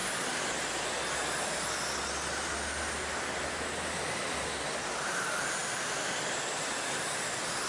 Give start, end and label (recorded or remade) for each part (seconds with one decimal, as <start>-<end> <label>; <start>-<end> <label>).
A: 0.0-7.7 recorded